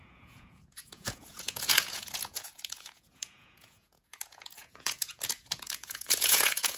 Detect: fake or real fake